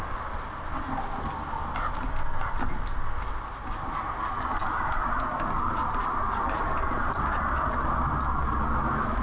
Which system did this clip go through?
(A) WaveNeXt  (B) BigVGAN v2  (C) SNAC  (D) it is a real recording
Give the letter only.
D